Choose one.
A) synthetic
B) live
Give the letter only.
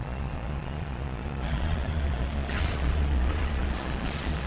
A